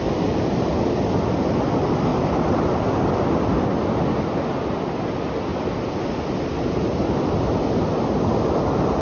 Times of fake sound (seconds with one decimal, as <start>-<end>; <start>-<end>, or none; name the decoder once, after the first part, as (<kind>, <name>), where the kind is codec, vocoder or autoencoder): 2.1-2.8 (vocoder, BigVGAN v2)